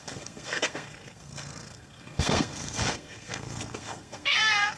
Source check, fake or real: fake